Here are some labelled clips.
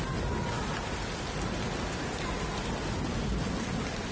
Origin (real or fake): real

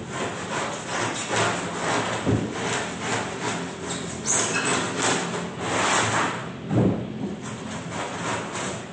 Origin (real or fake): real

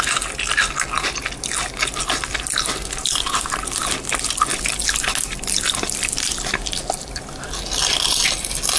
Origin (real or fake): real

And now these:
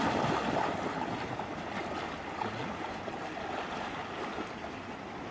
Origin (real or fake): real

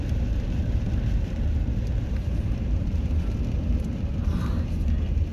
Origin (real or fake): fake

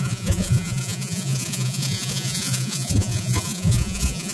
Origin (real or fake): fake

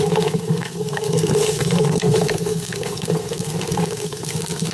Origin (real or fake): fake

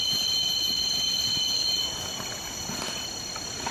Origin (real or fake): real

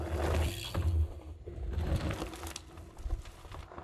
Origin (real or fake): real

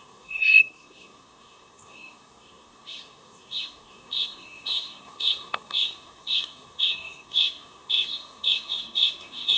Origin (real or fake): fake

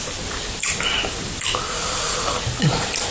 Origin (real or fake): real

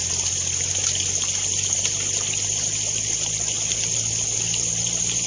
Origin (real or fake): real